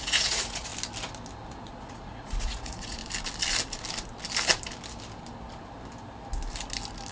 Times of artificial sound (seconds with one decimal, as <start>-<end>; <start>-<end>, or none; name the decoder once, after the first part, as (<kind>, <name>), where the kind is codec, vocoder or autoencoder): 0.0-0.7 (vocoder, Vocos); 1.6-3.0